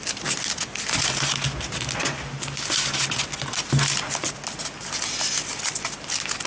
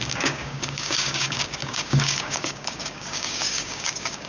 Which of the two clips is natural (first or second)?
first